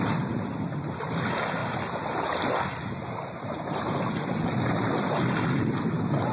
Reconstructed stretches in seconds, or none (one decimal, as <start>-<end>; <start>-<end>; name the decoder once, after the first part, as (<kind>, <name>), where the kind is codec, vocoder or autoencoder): none